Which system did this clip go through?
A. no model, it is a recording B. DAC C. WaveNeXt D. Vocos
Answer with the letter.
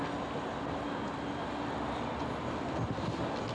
A